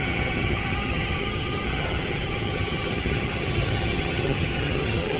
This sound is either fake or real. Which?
fake